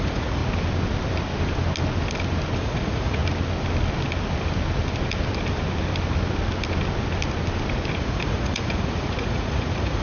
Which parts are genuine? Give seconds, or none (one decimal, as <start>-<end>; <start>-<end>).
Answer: 0.4-2.6; 3.2-8.0